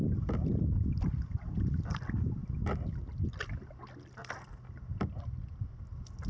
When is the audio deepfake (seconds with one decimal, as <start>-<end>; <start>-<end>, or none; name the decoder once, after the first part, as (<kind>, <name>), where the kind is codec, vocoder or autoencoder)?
none